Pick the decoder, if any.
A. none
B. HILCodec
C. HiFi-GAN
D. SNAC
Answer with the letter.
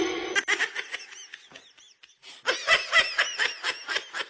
A